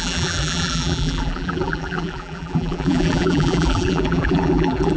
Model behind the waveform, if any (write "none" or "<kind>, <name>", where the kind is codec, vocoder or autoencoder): vocoder, BigVGAN v2